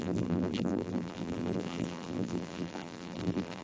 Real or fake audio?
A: fake